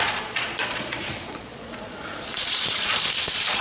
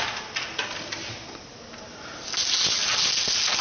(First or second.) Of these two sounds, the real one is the second